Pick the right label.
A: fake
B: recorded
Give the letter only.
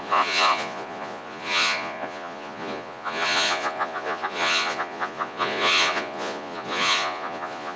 A